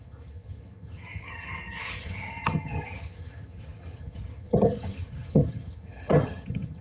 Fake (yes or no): yes